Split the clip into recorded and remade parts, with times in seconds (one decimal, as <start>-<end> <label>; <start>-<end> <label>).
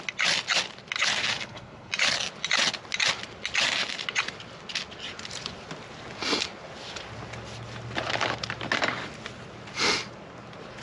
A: 0.0-1.3 recorded; 1.3-1.9 remade; 1.9-10.8 recorded